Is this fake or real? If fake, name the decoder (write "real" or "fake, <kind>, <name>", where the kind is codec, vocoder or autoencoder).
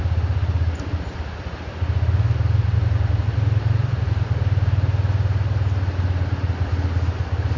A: real